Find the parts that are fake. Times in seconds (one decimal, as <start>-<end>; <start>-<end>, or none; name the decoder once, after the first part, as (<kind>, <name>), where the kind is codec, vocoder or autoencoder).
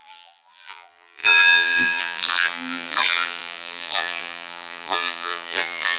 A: 0.0-6.0 (vocoder, BigVGAN v2)